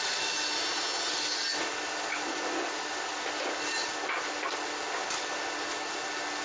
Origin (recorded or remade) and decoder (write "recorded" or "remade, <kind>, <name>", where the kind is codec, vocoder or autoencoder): recorded